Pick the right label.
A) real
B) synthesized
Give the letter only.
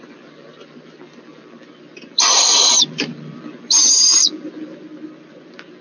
B